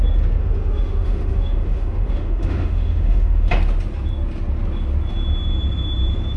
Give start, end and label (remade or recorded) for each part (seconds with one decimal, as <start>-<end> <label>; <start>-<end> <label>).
0.0-0.4 recorded; 0.4-3.5 remade; 3.5-6.4 recorded